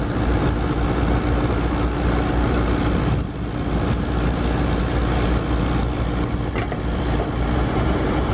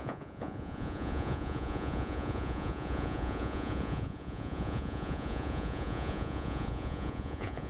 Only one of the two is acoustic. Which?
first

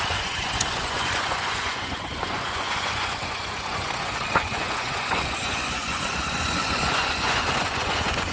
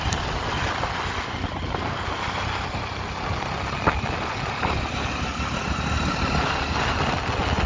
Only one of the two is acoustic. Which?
second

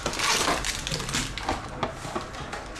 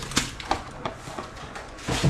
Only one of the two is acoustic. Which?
first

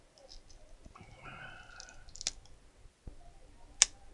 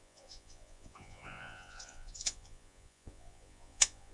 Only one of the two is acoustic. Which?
first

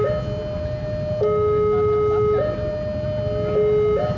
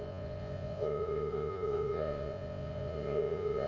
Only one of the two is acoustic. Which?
first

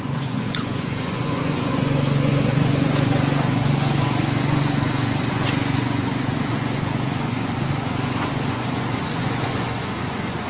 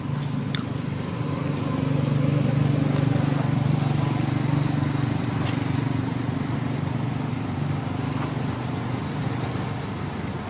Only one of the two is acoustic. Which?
second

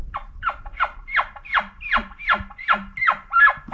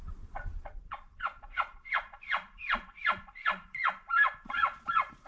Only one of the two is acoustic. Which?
first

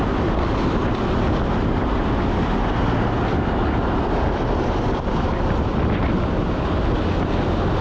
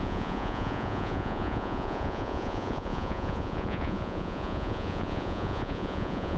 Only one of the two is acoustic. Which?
first